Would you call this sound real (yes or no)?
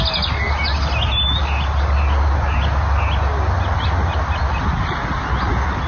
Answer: yes